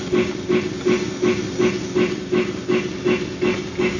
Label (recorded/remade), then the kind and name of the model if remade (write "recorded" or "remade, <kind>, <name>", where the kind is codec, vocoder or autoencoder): recorded